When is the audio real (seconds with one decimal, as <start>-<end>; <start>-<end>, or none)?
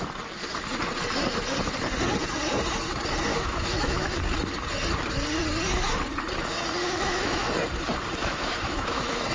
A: 0.0-3.3; 4.2-6.8; 7.5-8.2